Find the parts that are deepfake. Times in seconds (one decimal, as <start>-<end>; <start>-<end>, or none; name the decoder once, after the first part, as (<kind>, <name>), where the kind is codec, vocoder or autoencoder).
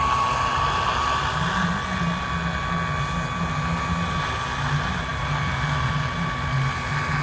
none